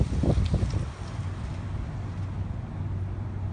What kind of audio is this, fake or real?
real